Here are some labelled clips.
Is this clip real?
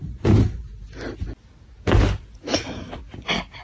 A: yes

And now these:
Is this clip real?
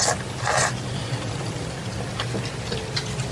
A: yes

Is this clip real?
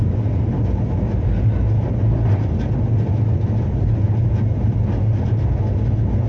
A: yes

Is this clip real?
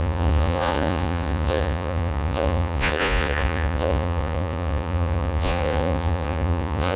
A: no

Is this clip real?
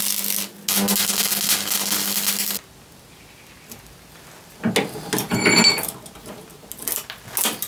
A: yes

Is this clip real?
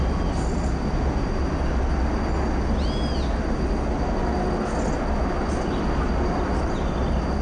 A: yes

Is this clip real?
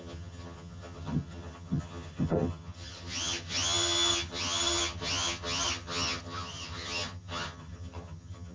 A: no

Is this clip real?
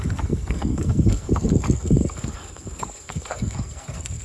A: no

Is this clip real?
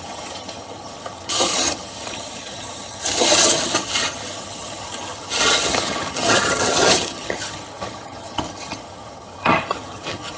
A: no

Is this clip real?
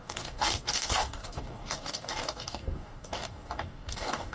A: no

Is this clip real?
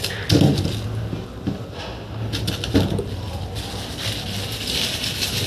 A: yes